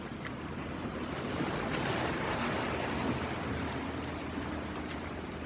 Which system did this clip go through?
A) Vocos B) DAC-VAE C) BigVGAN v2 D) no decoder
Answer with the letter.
D